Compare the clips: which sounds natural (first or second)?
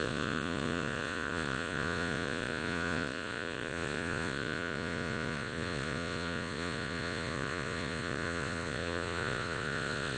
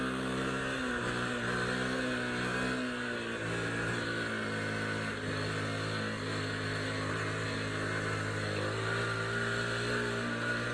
second